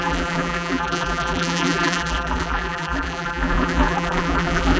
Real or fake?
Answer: fake